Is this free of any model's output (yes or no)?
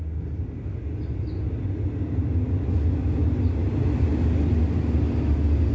yes